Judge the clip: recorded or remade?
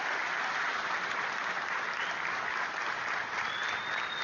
recorded